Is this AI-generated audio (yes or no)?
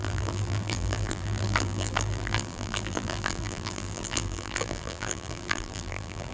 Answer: yes